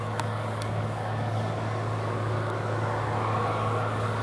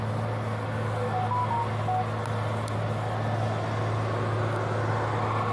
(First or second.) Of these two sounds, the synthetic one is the first